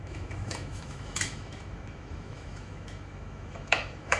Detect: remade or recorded remade